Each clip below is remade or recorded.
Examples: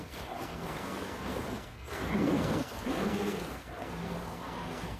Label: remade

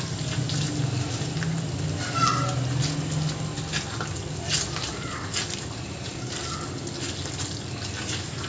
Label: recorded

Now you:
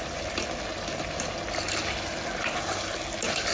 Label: recorded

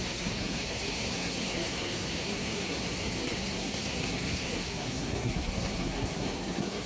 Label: remade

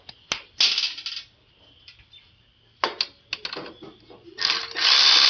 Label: recorded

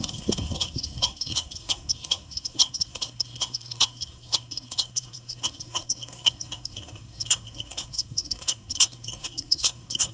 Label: remade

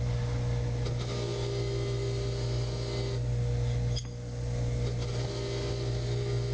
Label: recorded